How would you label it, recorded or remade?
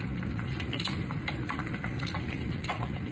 remade